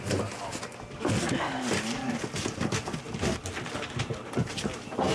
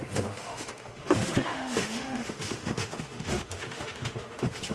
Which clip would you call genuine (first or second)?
first